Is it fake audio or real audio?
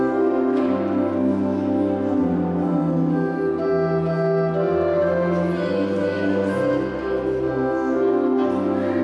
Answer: real